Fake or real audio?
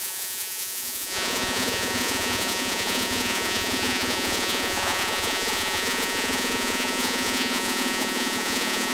fake